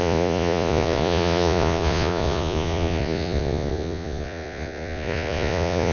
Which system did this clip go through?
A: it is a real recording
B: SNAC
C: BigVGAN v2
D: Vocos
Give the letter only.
D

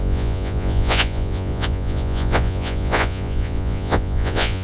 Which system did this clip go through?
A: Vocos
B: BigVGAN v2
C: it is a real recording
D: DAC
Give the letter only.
A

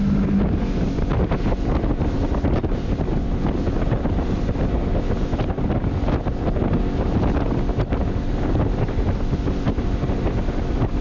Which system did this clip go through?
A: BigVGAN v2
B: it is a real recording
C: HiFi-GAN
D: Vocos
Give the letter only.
B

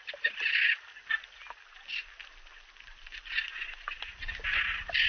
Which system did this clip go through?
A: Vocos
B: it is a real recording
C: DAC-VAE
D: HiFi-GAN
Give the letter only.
B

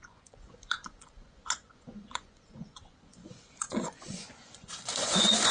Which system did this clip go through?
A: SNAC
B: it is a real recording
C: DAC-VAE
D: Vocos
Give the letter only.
D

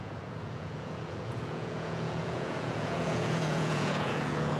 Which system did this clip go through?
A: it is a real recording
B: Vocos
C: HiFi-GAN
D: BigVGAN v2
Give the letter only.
B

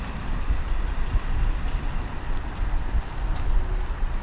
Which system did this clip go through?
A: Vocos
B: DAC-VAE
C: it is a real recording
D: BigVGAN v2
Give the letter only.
C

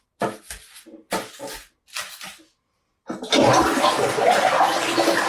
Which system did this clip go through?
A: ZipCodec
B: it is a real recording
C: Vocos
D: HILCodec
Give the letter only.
B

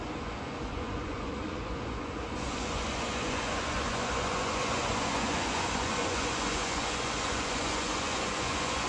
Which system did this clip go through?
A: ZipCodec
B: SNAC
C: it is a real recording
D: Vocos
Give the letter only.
D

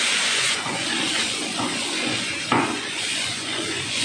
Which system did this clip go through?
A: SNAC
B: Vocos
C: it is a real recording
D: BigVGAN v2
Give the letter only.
B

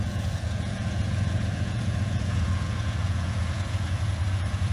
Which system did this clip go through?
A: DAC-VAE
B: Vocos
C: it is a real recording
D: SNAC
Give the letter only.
B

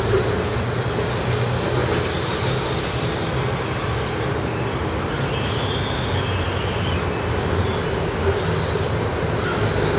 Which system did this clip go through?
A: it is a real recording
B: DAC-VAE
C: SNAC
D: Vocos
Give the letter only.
A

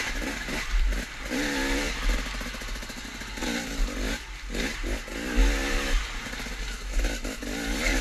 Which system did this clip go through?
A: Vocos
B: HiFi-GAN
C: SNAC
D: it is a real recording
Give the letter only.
D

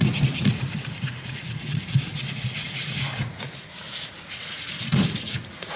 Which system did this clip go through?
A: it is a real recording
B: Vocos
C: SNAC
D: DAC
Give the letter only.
B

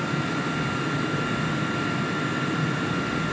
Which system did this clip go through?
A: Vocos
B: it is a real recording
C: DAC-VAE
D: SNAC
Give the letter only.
B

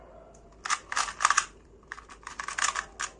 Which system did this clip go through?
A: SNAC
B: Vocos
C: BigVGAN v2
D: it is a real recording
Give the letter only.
D